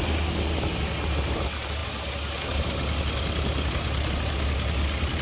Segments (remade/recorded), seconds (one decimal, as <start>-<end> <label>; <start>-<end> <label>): 0.0-5.2 recorded